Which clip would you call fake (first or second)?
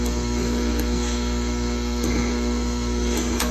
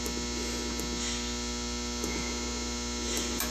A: first